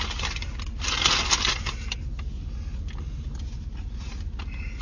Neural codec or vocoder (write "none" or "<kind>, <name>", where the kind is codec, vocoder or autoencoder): none